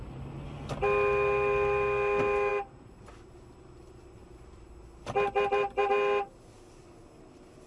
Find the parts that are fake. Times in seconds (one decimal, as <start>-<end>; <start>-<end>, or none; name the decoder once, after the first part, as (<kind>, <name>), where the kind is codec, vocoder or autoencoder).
none